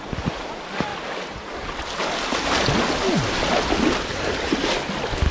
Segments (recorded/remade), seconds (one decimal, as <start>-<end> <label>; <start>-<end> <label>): 0.0-5.3 recorded